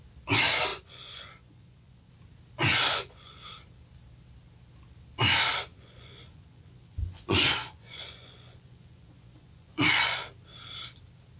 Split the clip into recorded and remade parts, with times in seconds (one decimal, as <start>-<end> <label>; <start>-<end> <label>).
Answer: 0.0-0.7 recorded; 0.7-2.1 remade; 2.1-2.7 recorded; 2.7-3.5 remade; 3.5-5.7 recorded; 5.7-10.2 remade; 10.2-11.4 recorded